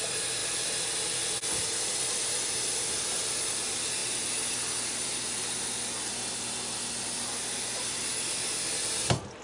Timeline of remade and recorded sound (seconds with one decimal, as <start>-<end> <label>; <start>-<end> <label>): 0.0-9.4 recorded

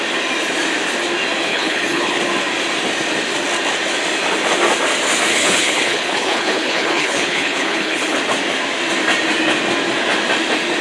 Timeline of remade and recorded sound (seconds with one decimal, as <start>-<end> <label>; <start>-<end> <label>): 0.0-1.5 recorded; 1.5-2.2 remade; 2.2-5.3 recorded; 5.3-8.2 remade; 8.2-10.8 recorded

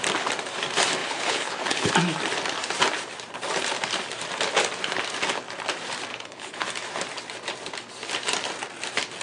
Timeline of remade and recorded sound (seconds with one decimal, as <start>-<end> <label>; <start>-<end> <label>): 0.0-1.0 recorded; 1.0-1.9 remade; 1.9-6.1 recorded; 6.1-6.6 remade; 6.6-9.2 recorded

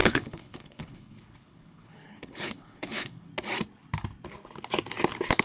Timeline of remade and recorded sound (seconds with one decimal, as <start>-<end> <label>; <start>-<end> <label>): 0.0-3.3 remade; 3.3-5.4 recorded

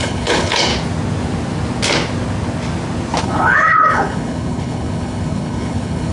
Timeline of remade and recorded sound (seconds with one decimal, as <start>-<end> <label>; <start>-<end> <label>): 0.0-0.7 remade; 0.7-3.2 recorded; 3.2-6.1 remade

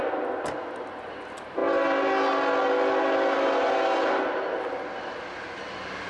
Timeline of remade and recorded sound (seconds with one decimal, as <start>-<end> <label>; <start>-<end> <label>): 0.0-6.1 recorded

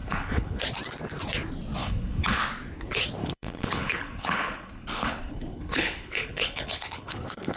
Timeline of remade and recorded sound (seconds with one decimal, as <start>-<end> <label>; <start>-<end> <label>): 0.0-0.6 remade; 0.6-1.8 recorded; 1.8-2.4 remade; 2.4-3.2 recorded; 3.2-7.6 remade

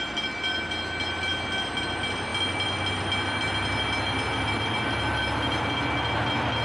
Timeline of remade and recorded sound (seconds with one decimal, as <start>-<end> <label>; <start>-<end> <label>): 0.0-6.6 recorded